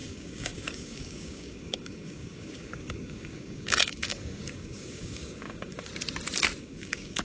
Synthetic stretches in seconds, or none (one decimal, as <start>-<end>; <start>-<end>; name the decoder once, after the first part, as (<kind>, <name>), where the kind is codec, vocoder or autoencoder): 0.0-5.9 (codec, DAC); 6.6-7.2